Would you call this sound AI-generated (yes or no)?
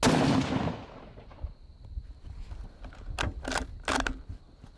no